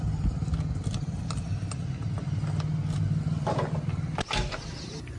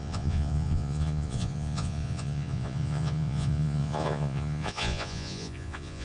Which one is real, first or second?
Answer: first